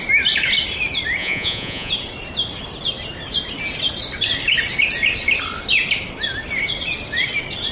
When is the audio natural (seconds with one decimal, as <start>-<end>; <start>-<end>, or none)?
0.0-1.2; 1.9-7.7